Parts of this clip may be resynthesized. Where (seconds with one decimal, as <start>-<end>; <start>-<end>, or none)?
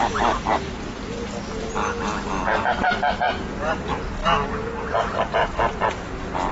none